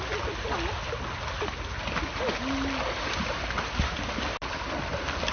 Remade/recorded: recorded